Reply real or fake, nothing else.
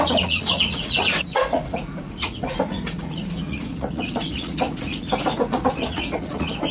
fake